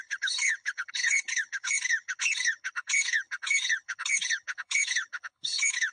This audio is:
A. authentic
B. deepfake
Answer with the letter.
B